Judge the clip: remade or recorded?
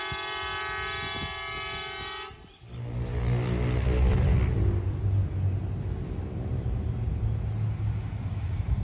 recorded